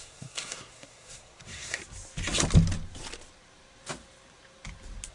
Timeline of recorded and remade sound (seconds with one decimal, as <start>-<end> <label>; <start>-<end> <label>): 0.0-1.8 remade; 1.8-5.1 recorded